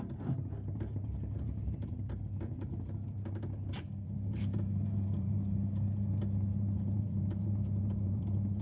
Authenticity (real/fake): fake